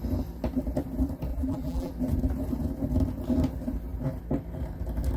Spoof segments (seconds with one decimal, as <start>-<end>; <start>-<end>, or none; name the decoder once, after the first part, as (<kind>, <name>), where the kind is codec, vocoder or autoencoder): 1.3-1.9 (vocoder, BigVGAN v2)